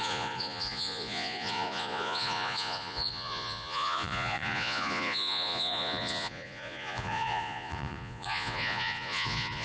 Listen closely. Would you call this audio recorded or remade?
remade